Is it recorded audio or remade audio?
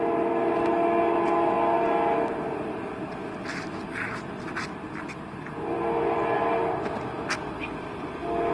recorded